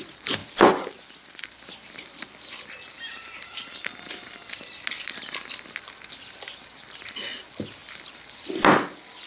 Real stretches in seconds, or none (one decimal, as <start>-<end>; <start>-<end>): none